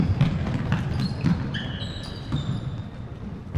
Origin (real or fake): real